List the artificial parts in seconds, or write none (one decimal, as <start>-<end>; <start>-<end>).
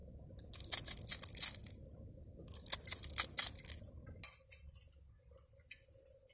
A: none